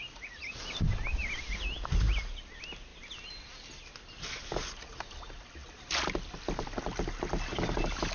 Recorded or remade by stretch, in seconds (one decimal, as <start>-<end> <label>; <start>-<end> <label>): 0.0-8.1 recorded